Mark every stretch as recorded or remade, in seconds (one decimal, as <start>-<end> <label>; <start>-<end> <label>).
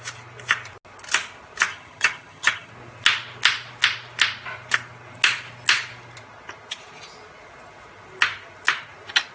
0.0-1.7 recorded; 1.7-2.7 remade; 2.7-9.3 recorded